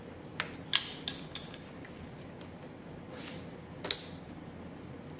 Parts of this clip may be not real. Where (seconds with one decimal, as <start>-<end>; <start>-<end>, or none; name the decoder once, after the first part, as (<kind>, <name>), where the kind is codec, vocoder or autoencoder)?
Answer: none